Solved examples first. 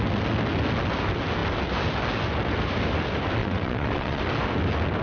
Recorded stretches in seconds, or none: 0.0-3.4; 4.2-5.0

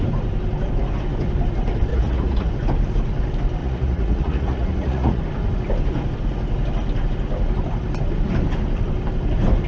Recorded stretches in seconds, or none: 0.0-1.9; 2.5-3.6; 5.2-9.7

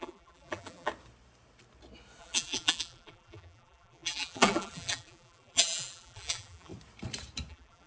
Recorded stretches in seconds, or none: 0.9-2.2; 6.7-7.5

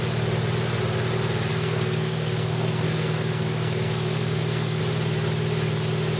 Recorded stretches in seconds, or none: 0.0-1.5; 4.8-6.2